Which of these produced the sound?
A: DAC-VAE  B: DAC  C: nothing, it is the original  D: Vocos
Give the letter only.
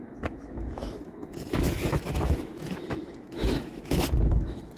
A